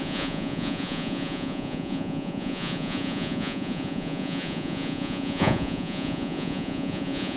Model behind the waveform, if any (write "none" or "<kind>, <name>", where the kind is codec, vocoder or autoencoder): vocoder, Vocos